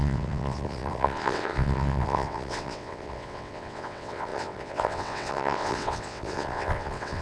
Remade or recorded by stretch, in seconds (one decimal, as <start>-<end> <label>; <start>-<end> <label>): 0.0-7.2 remade